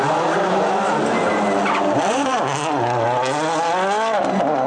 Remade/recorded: recorded